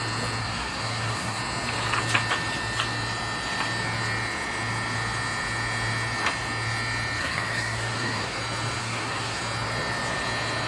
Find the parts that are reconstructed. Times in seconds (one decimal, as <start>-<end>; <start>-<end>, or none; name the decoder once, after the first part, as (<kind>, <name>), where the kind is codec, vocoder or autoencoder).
0.4-1.4 (codec, SNAC); 7.2-8.4; 8.8-9.4